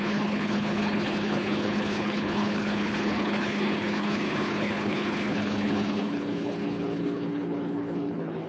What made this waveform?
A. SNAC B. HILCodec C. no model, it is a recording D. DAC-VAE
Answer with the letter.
B